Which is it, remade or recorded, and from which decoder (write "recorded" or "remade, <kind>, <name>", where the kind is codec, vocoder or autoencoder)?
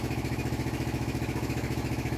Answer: remade, autoencoder, DAC-VAE